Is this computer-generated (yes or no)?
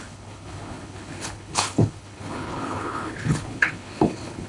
yes